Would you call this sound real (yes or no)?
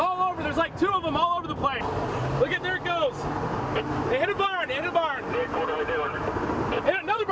yes